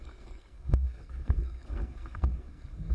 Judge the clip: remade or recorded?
remade